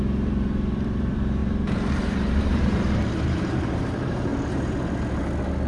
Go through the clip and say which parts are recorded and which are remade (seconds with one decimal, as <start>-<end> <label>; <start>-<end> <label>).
0.0-4.3 remade; 4.3-5.7 recorded